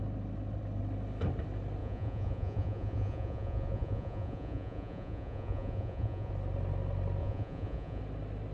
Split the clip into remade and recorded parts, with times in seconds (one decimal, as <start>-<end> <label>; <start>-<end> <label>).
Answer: 0.0-1.8 recorded; 1.8-6.3 remade; 6.3-7.2 recorded; 7.2-8.0 remade; 8.0-8.5 recorded

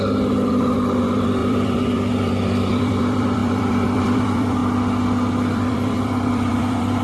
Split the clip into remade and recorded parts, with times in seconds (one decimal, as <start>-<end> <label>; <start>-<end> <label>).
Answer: 0.0-4.6 remade; 4.6-5.5 recorded; 5.5-7.0 remade

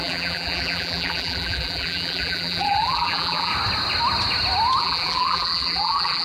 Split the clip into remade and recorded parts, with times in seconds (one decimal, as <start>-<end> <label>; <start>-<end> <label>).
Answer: 0.0-3.5 remade; 3.5-4.8 recorded; 4.8-6.2 remade